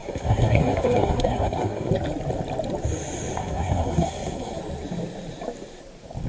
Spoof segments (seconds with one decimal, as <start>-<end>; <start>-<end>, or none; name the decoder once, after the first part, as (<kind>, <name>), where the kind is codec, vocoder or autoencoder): 0.0-1.9 (codec, SNAC); 3.4-4.6